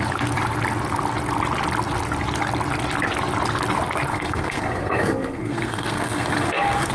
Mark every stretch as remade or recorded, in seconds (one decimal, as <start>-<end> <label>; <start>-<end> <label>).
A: 0.0-4.1 recorded; 4.1-6.9 remade